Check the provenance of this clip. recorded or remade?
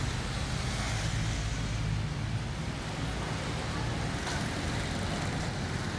recorded